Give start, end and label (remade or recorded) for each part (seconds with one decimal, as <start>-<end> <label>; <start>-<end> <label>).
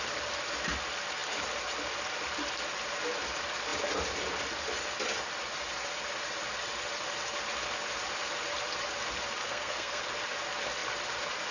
0.0-9.4 recorded; 9.4-10.0 remade; 10.0-11.5 recorded